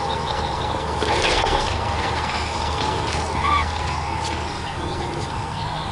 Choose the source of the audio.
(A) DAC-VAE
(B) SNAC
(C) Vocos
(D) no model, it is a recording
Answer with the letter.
B